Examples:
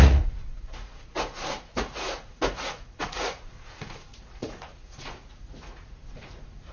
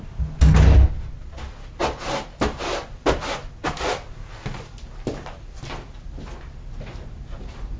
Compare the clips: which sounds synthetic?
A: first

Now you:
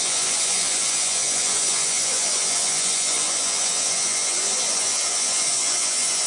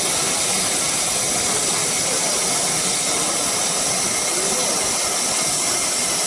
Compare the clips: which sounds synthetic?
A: first